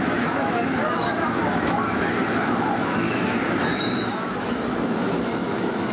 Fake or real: fake